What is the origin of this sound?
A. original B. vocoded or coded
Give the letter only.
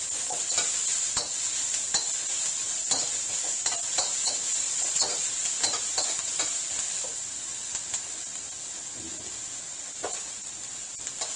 A